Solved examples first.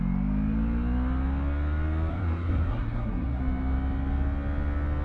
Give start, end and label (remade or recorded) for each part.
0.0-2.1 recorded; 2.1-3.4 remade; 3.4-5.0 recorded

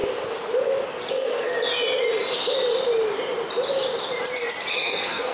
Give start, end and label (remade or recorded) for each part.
0.0-1.1 recorded; 1.1-1.5 remade; 1.5-4.7 recorded; 4.7-5.3 remade

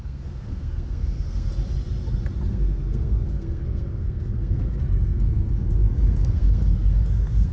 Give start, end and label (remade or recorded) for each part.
0.0-1.5 remade; 1.5-2.5 recorded; 2.5-7.5 remade

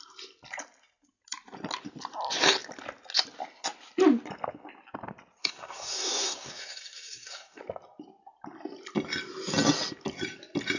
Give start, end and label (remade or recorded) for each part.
0.0-5.4 recorded; 5.4-7.6 remade; 7.6-10.8 recorded